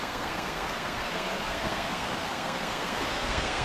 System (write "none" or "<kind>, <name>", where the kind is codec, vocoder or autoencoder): codec, SNAC